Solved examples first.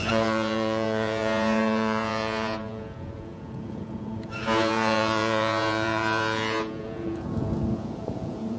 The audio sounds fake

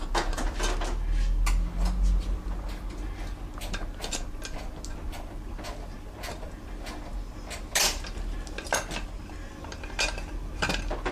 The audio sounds real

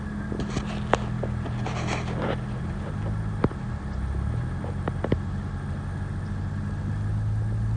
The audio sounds real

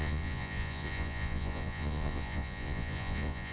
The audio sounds fake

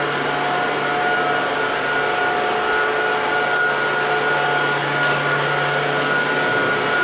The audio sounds real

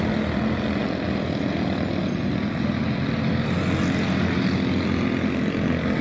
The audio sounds real